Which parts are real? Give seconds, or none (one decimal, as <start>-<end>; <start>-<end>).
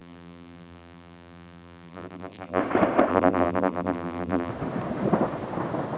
2.6-3.1; 4.5-6.0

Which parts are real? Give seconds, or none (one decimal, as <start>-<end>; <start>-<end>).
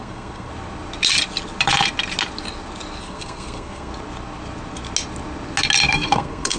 0.5-3.0; 3.9-5.9